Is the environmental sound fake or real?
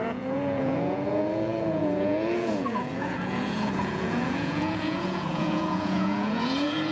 fake